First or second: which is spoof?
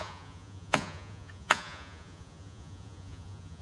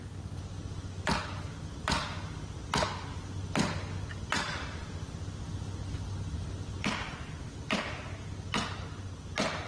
first